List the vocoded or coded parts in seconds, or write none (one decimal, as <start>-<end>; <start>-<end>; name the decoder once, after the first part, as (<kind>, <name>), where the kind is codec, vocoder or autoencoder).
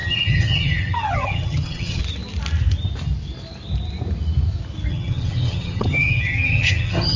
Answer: 0.0-2.0 (vocoder, HiFi-GAN); 4.9-7.2